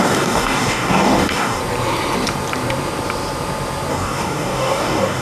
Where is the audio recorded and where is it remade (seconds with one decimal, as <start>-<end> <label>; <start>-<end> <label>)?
0.0-1.6 remade; 1.6-3.9 recorded; 3.9-5.2 remade